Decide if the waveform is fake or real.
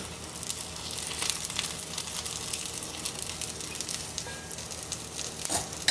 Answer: real